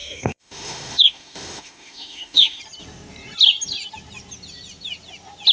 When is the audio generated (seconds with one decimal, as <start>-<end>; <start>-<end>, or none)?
0.0-2.6